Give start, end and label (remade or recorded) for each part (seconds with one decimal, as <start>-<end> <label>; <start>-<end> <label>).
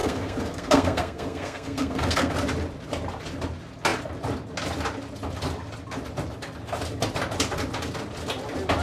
0.0-2.3 remade; 2.3-8.8 recorded